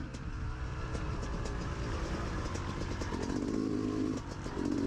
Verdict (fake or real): real